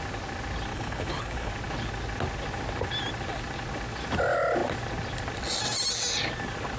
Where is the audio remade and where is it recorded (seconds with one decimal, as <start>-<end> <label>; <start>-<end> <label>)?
0.0-0.7 recorded; 0.7-1.5 remade; 1.5-6.8 recorded